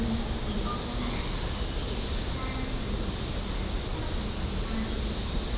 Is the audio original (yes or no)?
yes